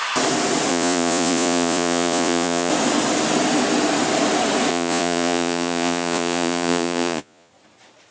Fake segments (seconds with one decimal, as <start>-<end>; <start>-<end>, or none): 0.7-2.7; 4.7-7.5

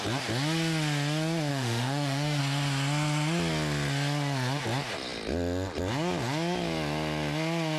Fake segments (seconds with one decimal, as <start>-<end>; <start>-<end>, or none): 1.5-2.4